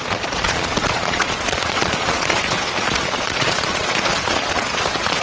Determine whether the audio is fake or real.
fake